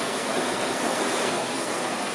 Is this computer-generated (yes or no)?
yes